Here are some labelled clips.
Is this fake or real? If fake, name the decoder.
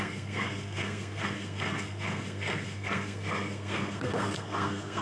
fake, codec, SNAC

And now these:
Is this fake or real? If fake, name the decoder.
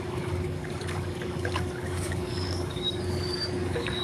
fake, codec, DAC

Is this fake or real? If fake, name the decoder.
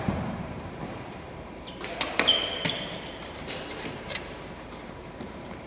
fake, vocoder, BigVGAN v2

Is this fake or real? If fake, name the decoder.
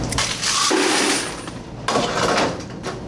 real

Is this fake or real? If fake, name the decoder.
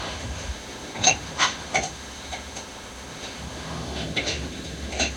fake, autoencoder, DAC-VAE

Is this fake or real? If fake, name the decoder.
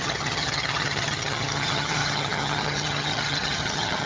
fake, vocoder, HiFi-GAN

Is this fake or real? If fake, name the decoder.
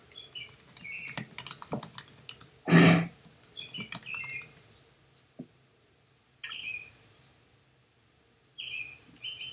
real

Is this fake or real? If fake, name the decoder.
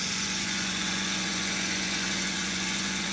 fake, vocoder, Vocos